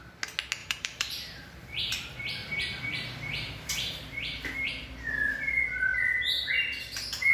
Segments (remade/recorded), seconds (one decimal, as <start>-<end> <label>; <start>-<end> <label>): 0.0-0.6 recorded; 0.6-4.7 remade; 4.7-7.3 recorded